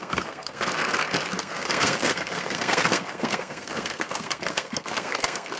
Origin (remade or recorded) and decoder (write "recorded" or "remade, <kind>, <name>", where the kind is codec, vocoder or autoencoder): remade, codec, SNAC